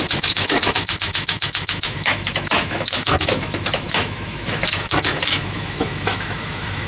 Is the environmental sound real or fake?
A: fake